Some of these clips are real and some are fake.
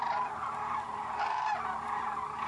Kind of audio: fake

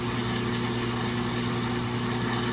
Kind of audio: real